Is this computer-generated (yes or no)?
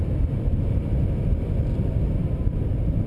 no